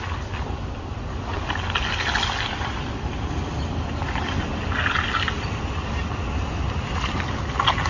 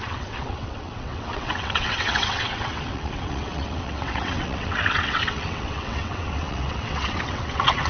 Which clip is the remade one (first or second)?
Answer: second